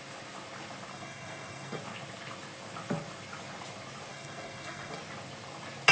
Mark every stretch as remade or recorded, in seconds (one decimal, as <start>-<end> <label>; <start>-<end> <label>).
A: 0.0-0.9 recorded; 0.9-1.8 remade; 1.8-4.1 recorded; 4.1-5.0 remade; 5.0-5.9 recorded